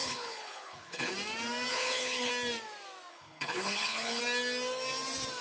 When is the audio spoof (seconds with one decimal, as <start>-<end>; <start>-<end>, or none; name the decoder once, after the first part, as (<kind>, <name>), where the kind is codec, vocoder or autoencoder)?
0.0-1.1 (codec, HILCodec); 1.7-2.3; 3.1-4.2